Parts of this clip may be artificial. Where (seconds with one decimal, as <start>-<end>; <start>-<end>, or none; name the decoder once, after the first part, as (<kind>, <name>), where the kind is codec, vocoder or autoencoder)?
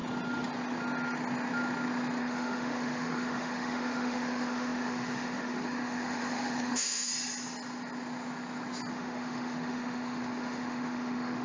2.2-7.1 (autoencoder, DAC-VAE); 8.9-11.4